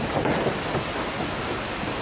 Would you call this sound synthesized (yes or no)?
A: no